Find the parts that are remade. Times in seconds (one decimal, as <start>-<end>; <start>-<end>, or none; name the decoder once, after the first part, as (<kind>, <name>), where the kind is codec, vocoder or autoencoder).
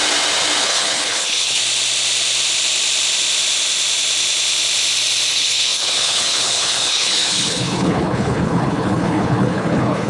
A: 0.6-1.6 (codec, HILCodec); 5.3-10.1